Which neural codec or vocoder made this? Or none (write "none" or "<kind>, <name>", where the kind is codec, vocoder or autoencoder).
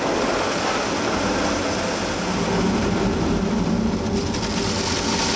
none